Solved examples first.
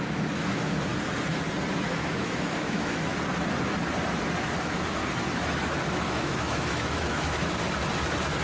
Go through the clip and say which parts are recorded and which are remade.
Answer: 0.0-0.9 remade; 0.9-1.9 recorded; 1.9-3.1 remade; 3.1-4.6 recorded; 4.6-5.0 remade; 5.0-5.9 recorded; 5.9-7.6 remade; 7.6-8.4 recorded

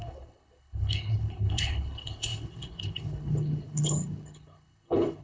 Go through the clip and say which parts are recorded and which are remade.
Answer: 0.0-5.2 remade

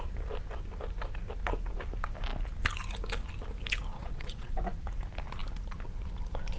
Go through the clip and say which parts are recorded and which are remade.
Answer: 0.0-3.9 recorded; 3.9-4.5 remade; 4.5-6.6 recorded

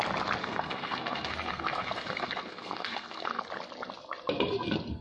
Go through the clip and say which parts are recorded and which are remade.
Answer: 0.0-0.4 recorded; 0.4-3.4 remade; 3.4-5.0 recorded

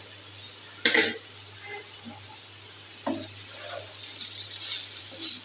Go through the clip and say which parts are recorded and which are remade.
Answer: 0.0-5.4 recorded

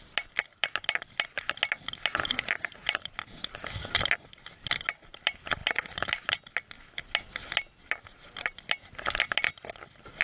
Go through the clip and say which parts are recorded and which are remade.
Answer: 0.0-10.2 recorded

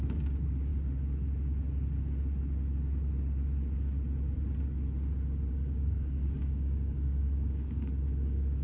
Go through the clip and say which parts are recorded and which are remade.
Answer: 0.0-0.7 remade; 0.7-5.5 recorded; 5.5-8.6 remade

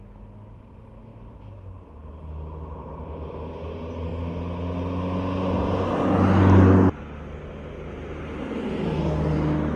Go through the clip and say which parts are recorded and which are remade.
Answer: 0.0-9.8 recorded